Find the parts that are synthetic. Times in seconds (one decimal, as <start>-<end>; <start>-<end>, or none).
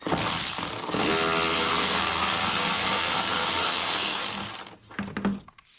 1.7-4.2